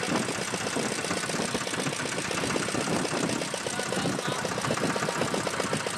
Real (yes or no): no